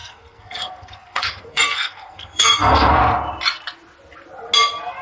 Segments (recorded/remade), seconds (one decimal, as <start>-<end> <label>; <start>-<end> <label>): 0.0-3.0 remade; 3.0-5.0 recorded